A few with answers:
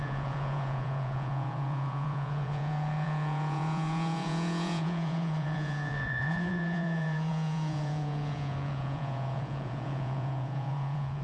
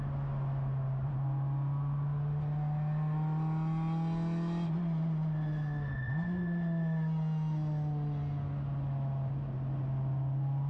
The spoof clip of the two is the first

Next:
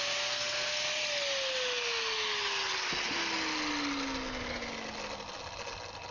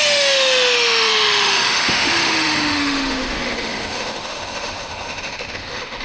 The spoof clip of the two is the second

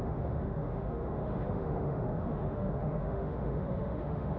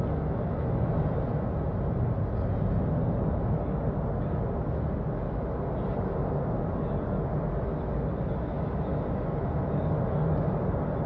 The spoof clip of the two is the first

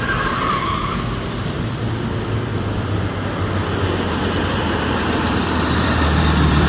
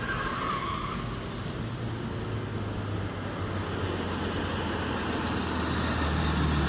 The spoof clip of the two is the first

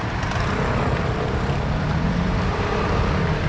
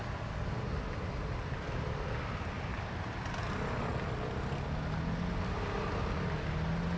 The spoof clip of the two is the first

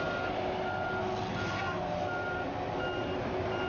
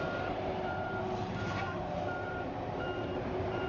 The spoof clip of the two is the second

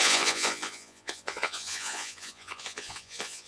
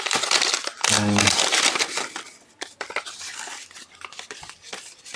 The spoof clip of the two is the first